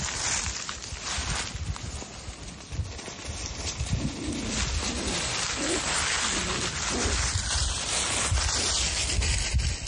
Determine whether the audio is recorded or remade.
recorded